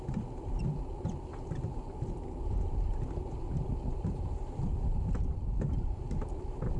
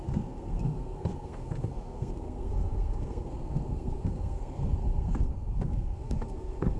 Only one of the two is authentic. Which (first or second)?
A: first